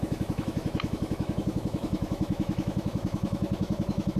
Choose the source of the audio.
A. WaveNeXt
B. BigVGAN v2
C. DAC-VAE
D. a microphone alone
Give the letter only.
C